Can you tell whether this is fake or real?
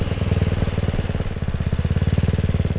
real